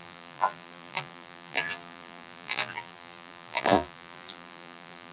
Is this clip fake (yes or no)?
yes